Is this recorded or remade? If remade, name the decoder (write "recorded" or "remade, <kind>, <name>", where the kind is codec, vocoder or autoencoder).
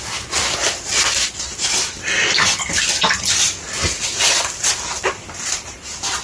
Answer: recorded